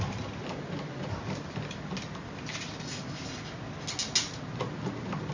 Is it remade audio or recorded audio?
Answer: recorded